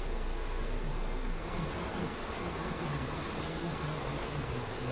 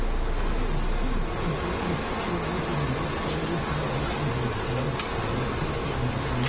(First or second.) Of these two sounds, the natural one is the second